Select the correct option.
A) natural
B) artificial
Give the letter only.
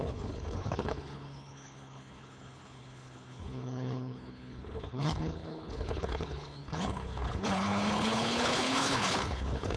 B